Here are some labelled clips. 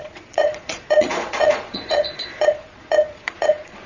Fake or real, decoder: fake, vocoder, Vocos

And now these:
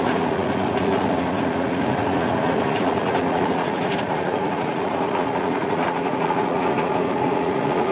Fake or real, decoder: fake, vocoder, Vocos